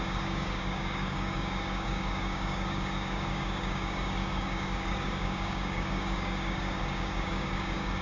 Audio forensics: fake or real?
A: fake